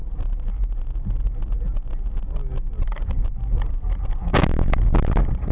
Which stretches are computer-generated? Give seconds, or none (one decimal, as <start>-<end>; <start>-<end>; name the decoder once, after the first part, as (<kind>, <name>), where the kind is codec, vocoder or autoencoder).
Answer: 4.2-4.8 (codec, DAC)